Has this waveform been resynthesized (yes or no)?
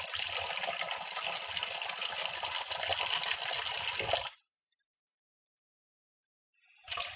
no